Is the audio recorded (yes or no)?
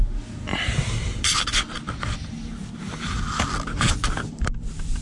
yes